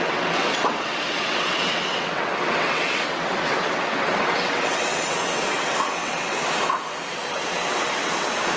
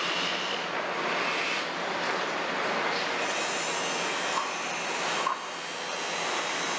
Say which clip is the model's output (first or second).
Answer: first